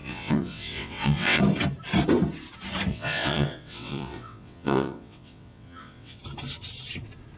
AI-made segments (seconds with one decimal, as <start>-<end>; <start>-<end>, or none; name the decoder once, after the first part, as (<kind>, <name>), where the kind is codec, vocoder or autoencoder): 0.0-1.4 (vocoder, WaveNeXt); 2.9-6.2